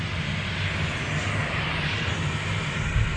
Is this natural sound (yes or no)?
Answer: yes